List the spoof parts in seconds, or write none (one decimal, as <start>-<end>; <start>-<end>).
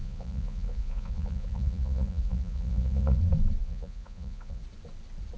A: 0.0-3.2; 3.6-4.6